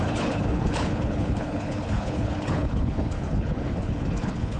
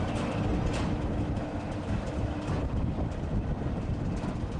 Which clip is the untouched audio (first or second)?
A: second